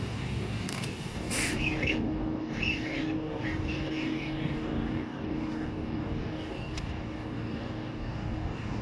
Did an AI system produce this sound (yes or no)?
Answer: yes